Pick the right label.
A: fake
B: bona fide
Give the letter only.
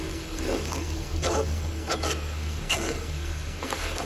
A